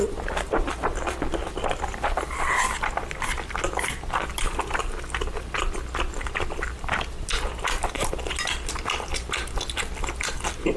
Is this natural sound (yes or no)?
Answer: yes